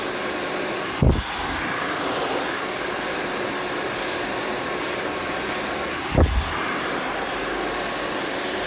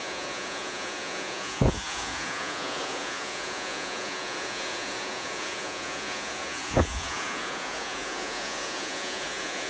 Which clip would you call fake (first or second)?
second